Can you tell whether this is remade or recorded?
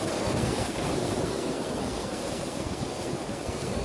remade